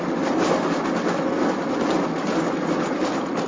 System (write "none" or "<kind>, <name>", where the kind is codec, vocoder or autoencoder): none